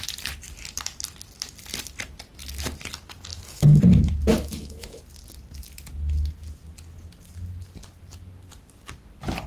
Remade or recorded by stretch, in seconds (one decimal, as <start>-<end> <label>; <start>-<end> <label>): 0.0-3.3 recorded; 3.3-3.8 remade; 3.8-4.3 recorded; 4.3-5.0 remade; 5.0-9.5 recorded